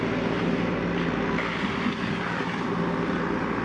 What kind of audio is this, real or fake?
real